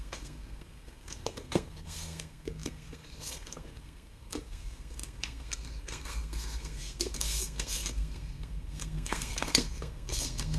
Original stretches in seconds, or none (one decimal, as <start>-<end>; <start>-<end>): none